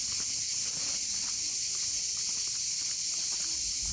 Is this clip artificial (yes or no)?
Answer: no